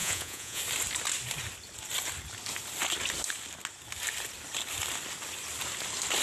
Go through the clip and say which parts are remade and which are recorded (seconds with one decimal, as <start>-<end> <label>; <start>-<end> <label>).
0.0-0.6 remade; 0.6-6.2 recorded